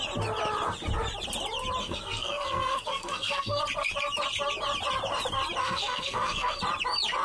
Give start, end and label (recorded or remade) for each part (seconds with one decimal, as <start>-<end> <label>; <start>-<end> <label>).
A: 0.0-1.8 recorded; 1.8-3.6 remade; 3.6-5.6 recorded; 5.6-6.6 remade; 6.6-7.2 recorded